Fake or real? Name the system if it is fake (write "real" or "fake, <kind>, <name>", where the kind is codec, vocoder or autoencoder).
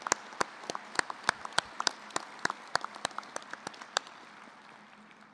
fake, vocoder, BigVGAN v2